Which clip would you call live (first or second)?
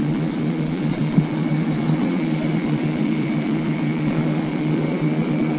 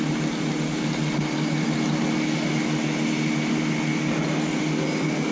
second